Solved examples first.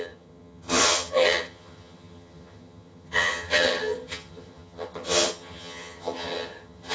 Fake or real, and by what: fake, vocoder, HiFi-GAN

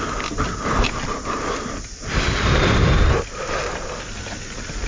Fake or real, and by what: real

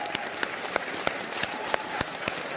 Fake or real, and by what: real